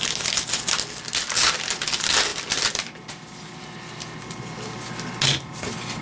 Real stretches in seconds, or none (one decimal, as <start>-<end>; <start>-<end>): 0.0-6.0